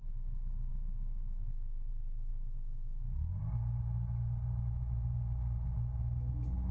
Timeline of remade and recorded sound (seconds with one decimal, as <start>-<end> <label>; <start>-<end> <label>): 0.0-6.7 recorded